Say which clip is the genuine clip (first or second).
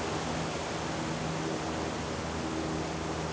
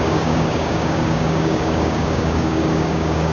first